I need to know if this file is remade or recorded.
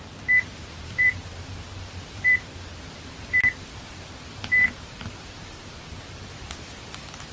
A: remade